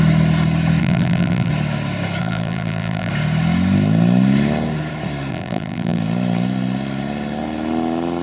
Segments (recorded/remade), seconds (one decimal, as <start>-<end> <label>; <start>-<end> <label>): 0.0-0.8 recorded; 0.8-1.5 remade; 1.5-2.2 recorded; 2.2-3.1 remade; 3.1-5.3 recorded; 5.3-6.0 remade; 6.0-8.2 recorded